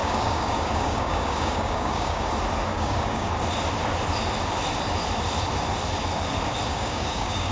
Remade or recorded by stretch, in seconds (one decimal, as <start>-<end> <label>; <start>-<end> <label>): 0.0-2.3 remade; 2.3-2.7 recorded; 2.7-3.3 remade; 3.3-6.7 recorded; 6.7-7.5 remade